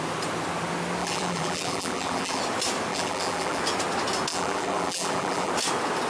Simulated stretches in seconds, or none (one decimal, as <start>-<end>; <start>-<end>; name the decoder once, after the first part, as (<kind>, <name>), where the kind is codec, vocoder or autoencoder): 1.0-2.4 (vocoder, BigVGAN v2); 2.9-3.6; 4.3-5.5